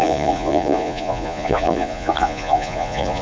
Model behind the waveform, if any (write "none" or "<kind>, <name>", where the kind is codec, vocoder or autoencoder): vocoder, Vocos